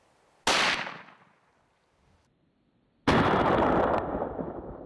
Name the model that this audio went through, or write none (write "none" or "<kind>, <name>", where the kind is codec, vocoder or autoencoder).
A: none